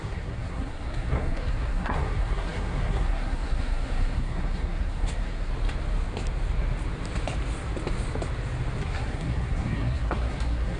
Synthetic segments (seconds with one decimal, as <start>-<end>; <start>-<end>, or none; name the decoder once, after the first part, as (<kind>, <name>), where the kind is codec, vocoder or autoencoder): 0.0-5.5 (codec, SNAC); 8.8-10.8